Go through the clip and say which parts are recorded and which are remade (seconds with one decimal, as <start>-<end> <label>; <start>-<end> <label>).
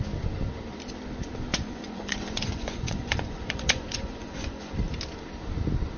0.0-1.5 recorded; 1.5-4.7 remade; 4.7-6.0 recorded